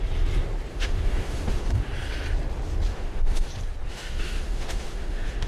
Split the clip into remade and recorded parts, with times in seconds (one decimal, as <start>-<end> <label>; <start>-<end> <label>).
0.0-0.7 recorded; 0.7-1.9 remade; 1.9-2.9 recorded; 2.9-3.5 remade; 3.5-3.9 recorded; 3.9-5.5 remade